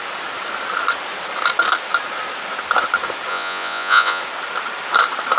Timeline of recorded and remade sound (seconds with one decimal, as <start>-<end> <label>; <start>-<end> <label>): 0.0-3.3 recorded; 3.3-4.2 remade; 4.2-5.4 recorded